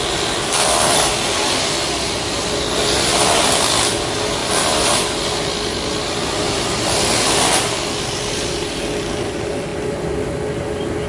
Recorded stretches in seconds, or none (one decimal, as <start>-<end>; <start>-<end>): 0.0-11.1